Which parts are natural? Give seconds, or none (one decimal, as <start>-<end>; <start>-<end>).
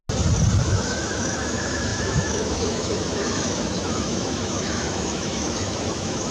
0.0-0.6